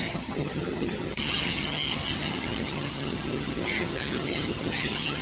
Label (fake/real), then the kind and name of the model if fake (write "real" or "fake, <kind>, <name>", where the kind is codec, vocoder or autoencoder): fake, vocoder, HiFi-GAN